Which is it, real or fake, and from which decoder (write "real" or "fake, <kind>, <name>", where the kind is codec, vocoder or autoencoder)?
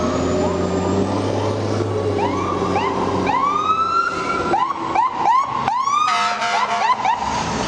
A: real